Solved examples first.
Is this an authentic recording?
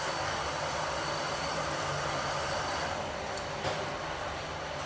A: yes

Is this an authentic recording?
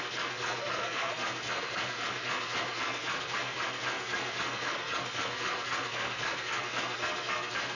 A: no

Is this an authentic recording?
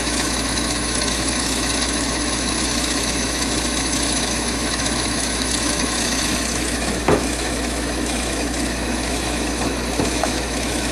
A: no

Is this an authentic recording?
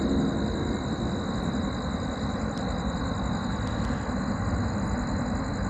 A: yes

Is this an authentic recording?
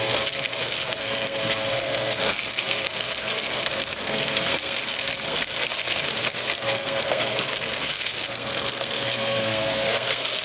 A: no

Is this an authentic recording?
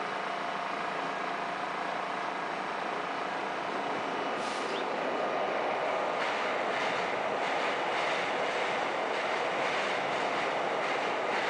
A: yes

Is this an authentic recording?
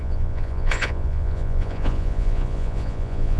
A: no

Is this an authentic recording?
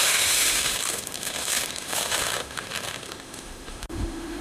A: no